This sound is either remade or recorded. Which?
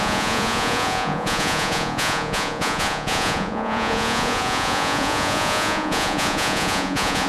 remade